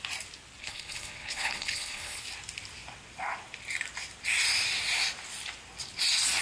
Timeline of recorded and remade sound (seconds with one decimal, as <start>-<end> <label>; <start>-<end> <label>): 0.0-0.6 recorded; 0.6-2.2 remade; 2.2-6.4 recorded